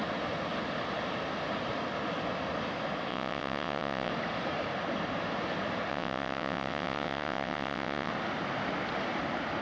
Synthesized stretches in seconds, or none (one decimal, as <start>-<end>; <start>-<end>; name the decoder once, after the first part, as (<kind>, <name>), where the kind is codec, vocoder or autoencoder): 3.1-4.1 (vocoder, WaveNeXt); 5.9-8.1